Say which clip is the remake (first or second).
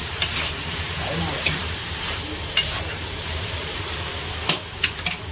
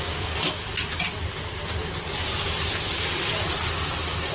first